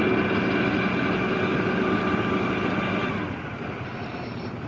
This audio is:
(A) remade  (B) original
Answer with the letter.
B